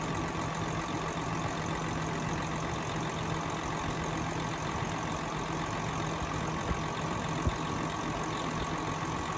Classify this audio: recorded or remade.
recorded